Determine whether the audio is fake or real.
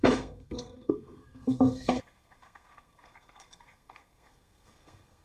fake